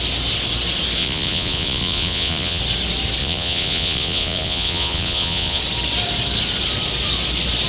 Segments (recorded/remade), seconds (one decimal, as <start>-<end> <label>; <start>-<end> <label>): 0.0-1.0 recorded; 1.0-2.6 remade; 2.6-3.2 recorded; 3.2-5.6 remade; 5.6-7.7 recorded